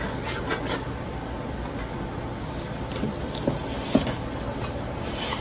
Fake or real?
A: real